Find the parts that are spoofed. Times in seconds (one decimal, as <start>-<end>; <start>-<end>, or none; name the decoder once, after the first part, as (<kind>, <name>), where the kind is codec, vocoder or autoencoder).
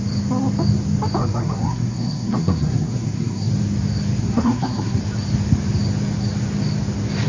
1.2-3.5 (codec, SNAC); 4.2-5.0